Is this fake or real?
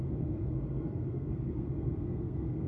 fake